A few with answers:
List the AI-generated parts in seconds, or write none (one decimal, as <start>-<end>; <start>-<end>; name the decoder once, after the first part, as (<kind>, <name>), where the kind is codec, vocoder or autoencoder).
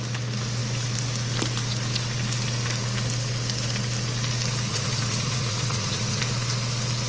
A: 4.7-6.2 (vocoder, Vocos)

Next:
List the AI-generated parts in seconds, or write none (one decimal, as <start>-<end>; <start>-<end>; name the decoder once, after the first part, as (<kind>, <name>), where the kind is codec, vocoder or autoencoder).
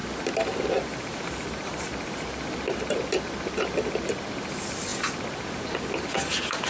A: none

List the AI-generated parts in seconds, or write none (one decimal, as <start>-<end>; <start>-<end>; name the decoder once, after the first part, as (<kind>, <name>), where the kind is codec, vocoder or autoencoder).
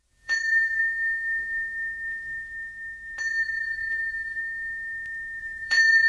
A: 0.0-0.8 (vocoder, Vocos); 3.2-4.4; 5.4-6.1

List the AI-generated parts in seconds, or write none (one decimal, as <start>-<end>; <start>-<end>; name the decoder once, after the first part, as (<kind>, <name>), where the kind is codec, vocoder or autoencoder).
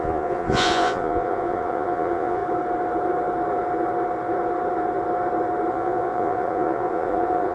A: 0.0-2.4 (vocoder, Vocos); 5.7-7.5